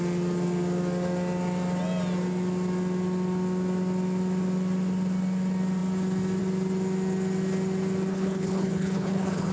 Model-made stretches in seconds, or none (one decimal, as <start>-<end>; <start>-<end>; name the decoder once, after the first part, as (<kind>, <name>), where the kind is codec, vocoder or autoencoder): 8.1-9.5 (codec, HILCodec)